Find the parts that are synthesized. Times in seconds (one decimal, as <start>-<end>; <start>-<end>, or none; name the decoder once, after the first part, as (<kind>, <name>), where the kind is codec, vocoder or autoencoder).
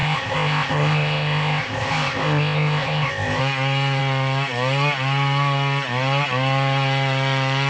0.0-3.4 (codec, ZipCodec)